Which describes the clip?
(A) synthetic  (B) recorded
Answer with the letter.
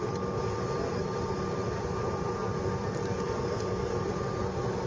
B